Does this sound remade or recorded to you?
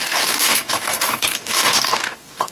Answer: remade